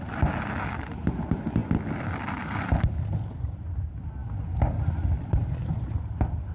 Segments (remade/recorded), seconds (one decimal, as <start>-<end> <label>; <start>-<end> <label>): 0.0-6.5 recorded